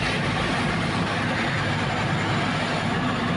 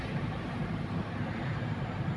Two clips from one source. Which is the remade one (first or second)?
second